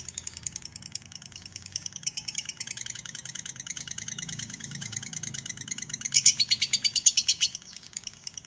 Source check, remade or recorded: remade